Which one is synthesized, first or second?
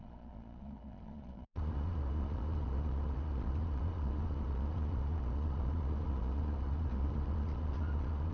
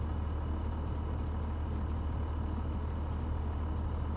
first